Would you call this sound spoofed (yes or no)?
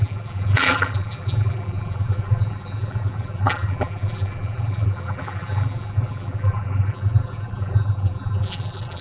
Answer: yes